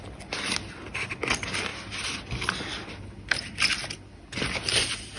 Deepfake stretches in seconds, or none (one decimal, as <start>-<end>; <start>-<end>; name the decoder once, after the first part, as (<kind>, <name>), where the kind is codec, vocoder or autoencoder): none